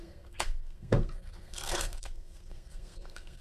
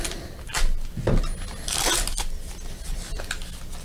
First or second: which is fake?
first